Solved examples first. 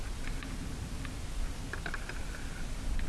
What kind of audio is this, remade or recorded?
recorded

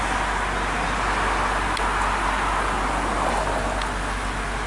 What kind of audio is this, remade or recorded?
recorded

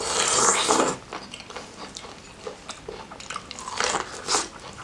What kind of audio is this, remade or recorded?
recorded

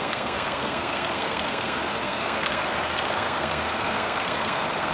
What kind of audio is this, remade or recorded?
remade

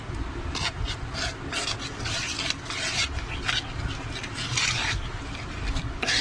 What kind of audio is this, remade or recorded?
recorded